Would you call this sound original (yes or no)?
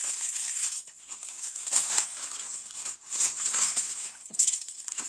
no